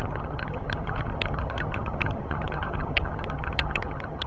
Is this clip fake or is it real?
fake